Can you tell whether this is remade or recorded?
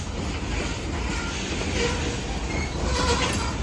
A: recorded